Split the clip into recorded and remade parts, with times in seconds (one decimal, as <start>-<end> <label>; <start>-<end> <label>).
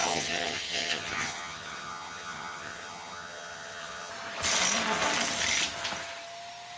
0.0-4.1 remade; 4.1-6.8 recorded